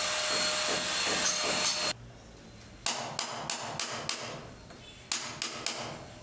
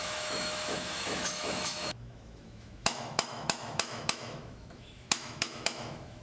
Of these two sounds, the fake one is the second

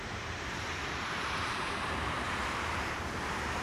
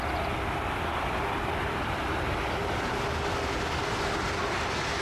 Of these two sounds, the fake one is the first